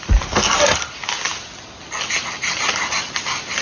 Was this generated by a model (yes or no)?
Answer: no